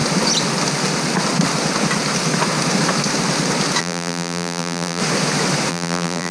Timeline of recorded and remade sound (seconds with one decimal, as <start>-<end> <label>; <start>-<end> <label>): 0.0-3.8 recorded; 3.8-5.0 remade; 5.0-5.7 recorded; 5.7-6.3 remade